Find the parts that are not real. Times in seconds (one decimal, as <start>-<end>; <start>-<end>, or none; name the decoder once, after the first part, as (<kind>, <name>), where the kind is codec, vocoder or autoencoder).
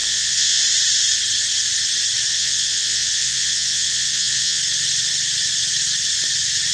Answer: 0.0-0.6 (vocoder, Vocos); 2.3-4.6